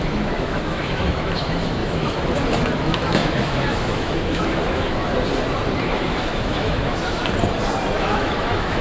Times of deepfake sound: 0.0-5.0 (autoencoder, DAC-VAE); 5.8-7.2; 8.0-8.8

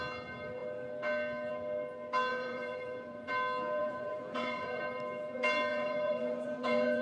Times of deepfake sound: 2.3-3.3 (vocoder, Vocos); 3.8-4.8; 5.7-7.0